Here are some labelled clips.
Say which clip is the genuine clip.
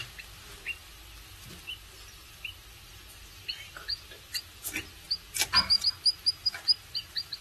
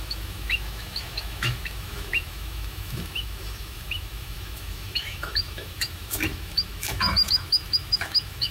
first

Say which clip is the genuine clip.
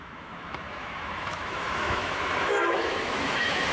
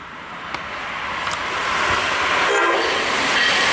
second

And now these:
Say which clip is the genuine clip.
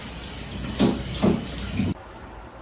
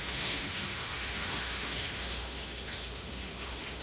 first